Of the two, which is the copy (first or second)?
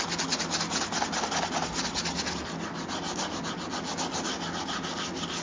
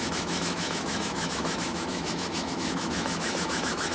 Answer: second